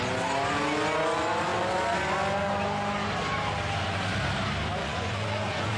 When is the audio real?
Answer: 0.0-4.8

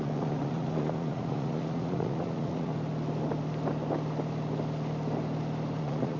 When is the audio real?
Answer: 2.7-5.8